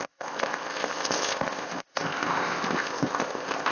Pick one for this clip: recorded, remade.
remade